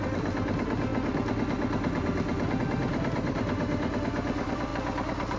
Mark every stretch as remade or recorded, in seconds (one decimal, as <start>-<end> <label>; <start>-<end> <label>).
0.0-0.9 remade; 0.9-2.6 recorded; 2.6-4.7 remade; 4.7-5.4 recorded